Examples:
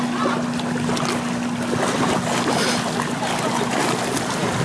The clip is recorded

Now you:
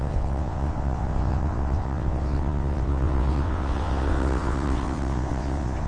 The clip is remade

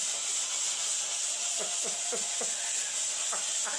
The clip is recorded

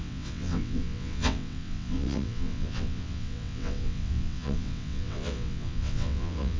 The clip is remade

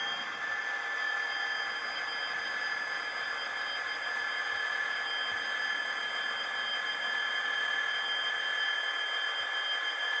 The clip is recorded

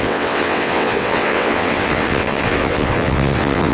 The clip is remade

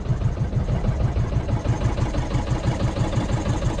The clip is recorded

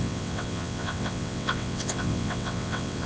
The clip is remade